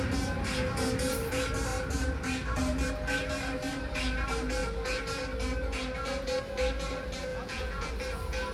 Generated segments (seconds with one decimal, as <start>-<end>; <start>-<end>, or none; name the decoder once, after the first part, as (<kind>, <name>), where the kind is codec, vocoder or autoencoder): 7.3-7.9 (vocoder, Vocos)